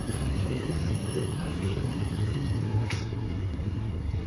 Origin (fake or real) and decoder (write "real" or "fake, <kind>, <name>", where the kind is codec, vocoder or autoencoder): fake, codec, SNAC